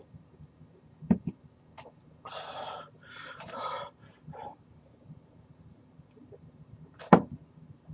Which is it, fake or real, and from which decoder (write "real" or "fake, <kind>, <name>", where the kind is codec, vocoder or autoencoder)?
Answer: fake, vocoder, BigVGAN v2